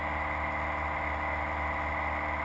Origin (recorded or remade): recorded